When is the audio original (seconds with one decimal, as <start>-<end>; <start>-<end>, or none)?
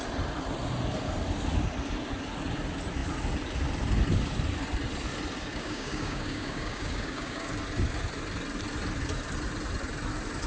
0.0-5.5; 7.5-10.5